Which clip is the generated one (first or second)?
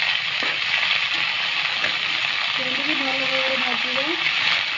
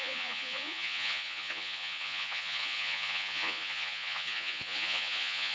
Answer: second